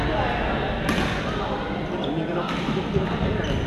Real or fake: real